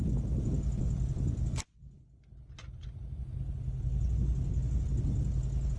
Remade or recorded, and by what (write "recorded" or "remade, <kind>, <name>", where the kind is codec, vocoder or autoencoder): recorded